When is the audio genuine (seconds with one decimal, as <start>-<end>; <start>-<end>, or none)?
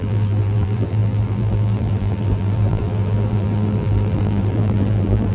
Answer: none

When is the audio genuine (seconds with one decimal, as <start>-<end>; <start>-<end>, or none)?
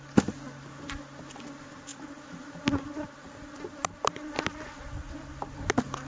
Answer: 0.0-6.1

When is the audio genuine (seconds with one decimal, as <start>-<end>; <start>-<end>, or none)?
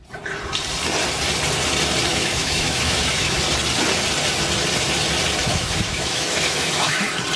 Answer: 0.0-2.1; 3.4-5.5; 7.0-7.4